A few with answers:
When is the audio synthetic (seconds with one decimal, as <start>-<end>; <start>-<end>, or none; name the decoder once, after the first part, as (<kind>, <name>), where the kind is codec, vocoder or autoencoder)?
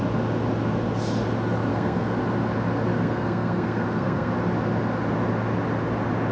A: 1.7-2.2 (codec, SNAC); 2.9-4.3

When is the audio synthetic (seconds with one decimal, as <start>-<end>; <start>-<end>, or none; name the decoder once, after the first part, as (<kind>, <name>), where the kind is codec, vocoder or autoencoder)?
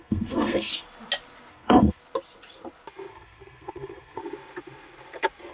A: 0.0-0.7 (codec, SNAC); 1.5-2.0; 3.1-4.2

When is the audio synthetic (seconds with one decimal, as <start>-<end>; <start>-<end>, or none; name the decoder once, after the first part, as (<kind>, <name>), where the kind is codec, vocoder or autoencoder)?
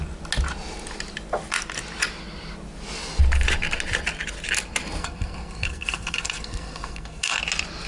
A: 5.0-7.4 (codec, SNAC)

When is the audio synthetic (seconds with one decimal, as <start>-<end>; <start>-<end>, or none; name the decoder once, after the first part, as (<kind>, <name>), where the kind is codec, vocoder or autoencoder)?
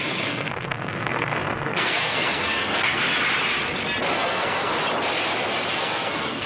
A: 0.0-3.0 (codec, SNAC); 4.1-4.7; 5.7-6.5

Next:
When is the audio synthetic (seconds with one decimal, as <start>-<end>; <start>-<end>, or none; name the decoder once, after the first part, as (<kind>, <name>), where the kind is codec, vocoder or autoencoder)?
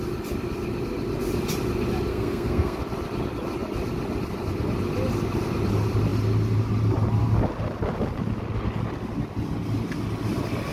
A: 2.1-2.8 (codec, SNAC)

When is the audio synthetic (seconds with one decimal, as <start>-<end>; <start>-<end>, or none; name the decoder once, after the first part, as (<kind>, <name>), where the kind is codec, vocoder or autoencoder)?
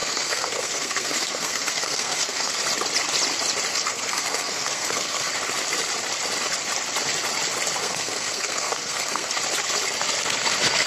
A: 0.0-2.5 (codec, SNAC); 3.7-5.3; 7.8-9.3